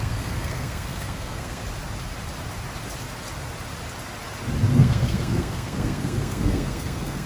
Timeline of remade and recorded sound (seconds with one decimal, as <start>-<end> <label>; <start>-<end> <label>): 0.0-1.6 remade; 1.6-4.7 recorded; 4.7-7.3 remade